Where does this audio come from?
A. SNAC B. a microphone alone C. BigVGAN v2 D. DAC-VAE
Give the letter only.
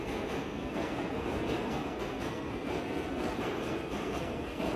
A